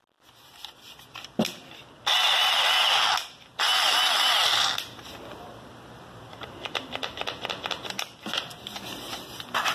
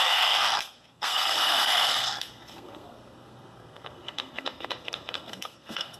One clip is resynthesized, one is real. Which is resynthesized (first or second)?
second